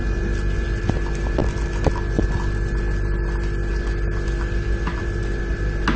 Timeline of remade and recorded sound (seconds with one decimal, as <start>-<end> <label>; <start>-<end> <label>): 0.0-6.0 recorded